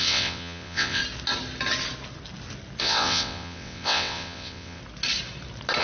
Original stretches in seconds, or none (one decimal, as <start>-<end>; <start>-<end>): 1.0-2.8; 4.8-5.8